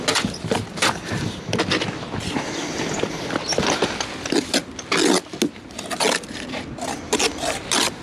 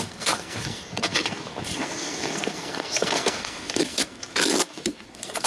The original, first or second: first